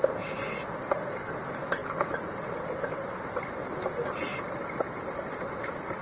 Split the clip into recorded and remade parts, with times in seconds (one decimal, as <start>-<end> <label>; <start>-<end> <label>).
0.0-1.8 recorded; 1.8-2.5 remade; 2.5-4.3 recorded; 4.3-6.0 remade